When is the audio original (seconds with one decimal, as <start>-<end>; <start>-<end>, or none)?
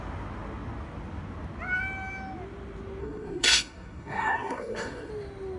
0.0-3.0; 5.1-5.6